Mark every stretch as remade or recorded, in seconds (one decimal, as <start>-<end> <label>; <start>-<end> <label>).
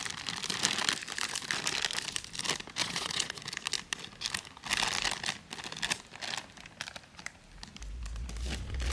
0.0-2.8 recorded; 2.8-3.4 remade; 3.4-8.9 recorded